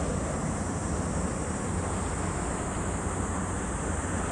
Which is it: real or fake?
real